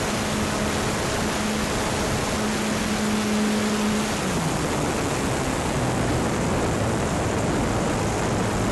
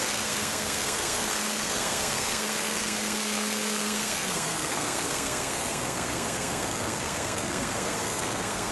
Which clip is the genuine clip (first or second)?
first